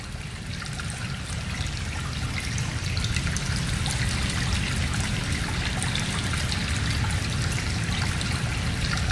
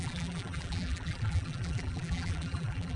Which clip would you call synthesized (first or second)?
second